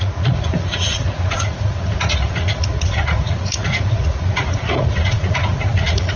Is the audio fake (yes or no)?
yes